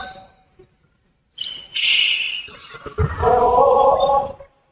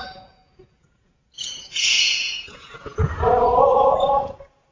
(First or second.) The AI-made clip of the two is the second